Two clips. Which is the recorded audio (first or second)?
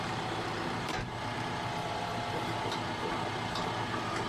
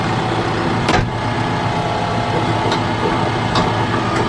second